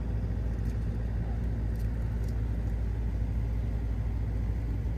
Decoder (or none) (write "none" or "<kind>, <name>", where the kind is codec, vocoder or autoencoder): none